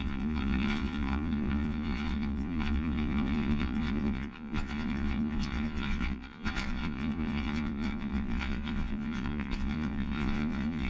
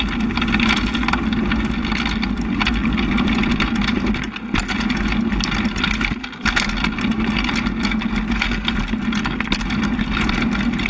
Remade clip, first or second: first